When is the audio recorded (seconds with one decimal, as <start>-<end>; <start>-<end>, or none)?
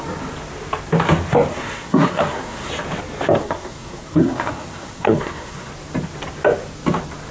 0.0-1.5; 2.7-3.4; 5.7-7.3